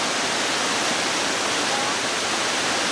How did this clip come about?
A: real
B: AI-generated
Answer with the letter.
A